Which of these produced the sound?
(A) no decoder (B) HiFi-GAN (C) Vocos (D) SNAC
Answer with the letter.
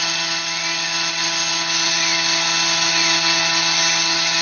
A